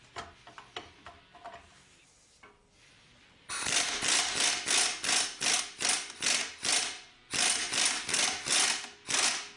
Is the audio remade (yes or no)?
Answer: no